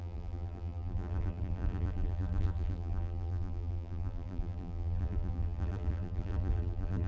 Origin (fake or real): fake